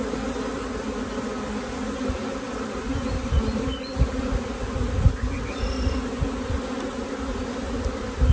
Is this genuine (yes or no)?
yes